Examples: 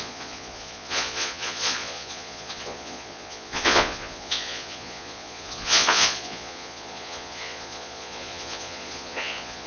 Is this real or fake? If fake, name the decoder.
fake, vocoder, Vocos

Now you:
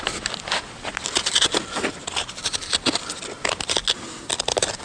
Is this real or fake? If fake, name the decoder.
real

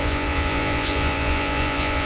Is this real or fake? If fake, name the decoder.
fake, vocoder, Vocos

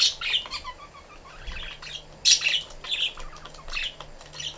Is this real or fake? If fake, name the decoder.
real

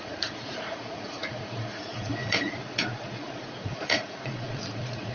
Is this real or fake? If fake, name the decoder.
fake, vocoder, Vocos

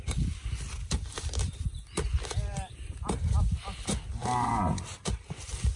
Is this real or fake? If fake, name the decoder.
real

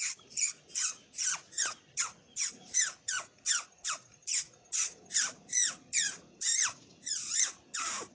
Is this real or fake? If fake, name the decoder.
fake, vocoder, Vocos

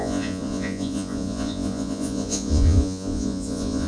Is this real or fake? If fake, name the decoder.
fake, vocoder, Vocos